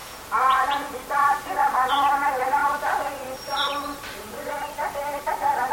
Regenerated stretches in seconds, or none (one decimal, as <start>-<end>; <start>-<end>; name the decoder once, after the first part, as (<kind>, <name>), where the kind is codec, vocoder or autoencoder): 0.0-0.9 (vocoder, Vocos)